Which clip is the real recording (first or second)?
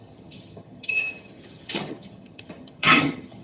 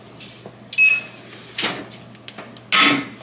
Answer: second